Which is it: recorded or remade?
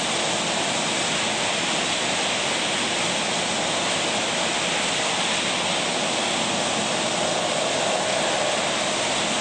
recorded